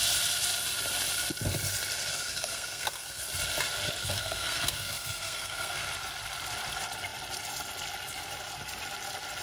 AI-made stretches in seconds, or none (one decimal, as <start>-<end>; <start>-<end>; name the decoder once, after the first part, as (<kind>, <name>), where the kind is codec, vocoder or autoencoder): 2.1-3.2 (codec, SNAC); 4.0-5.8